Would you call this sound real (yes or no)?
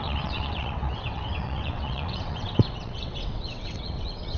no